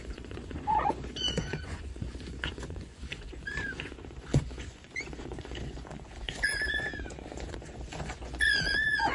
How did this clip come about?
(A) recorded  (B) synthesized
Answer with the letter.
B